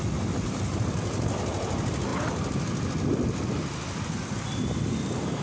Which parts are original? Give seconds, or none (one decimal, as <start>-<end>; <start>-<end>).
0.0-5.4